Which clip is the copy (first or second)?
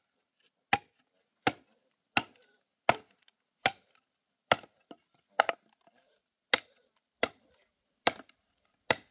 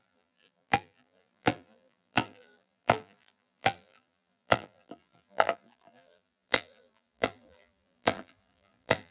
second